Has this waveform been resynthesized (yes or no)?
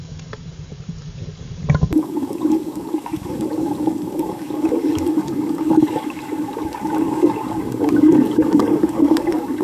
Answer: yes